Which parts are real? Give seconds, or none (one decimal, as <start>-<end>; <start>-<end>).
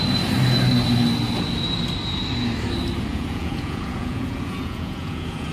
0.0-3.1